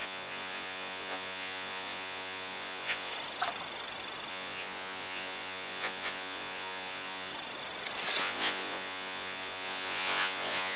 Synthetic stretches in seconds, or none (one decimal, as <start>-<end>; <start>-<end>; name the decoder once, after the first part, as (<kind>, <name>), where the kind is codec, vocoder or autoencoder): 0.0-3.1 (vocoder, Vocos); 4.3-7.3; 8.2-10.8